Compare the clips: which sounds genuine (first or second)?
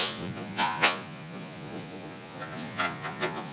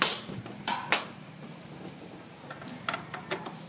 second